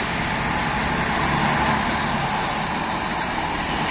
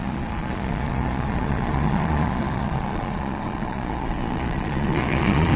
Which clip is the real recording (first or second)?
first